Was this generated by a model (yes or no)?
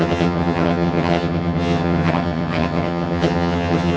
yes